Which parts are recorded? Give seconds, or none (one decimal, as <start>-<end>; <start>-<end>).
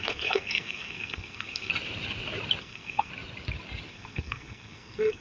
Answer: 1.7-2.6; 3.1-3.9